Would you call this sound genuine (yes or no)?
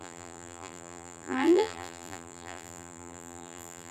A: no